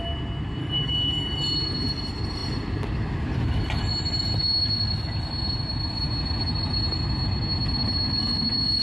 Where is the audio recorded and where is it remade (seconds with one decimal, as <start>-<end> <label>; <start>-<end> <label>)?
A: 0.0-0.6 recorded; 0.6-1.4 remade; 1.4-8.8 recorded